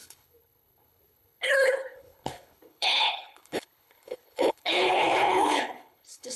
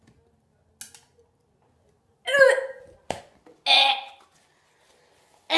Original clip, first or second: second